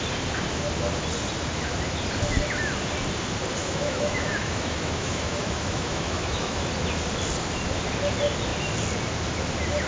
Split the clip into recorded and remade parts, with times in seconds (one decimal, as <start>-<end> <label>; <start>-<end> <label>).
0.0-3.6 recorded; 3.6-6.7 remade; 6.7-9.9 recorded